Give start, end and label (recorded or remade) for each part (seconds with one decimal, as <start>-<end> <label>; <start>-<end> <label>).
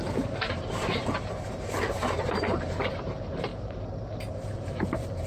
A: 0.0-3.5 remade; 3.5-4.3 recorded; 4.3-5.3 remade